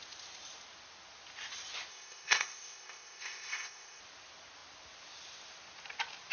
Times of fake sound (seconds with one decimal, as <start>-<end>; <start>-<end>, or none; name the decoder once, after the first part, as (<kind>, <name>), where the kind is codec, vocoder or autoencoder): 1.9-4.0 (codec, ZipCodec)